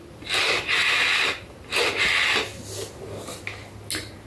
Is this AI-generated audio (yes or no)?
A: no